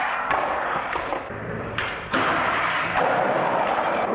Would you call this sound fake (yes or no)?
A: yes